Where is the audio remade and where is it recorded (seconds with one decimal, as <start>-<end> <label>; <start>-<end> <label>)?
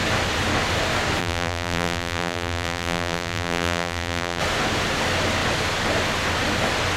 0.0-1.2 recorded; 1.2-4.4 remade; 4.4-7.0 recorded